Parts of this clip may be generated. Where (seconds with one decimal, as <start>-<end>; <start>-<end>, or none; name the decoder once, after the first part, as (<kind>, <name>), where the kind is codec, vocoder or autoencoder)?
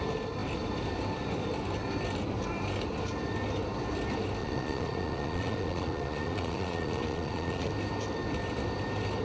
4.4-7.7 (vocoder, Vocos)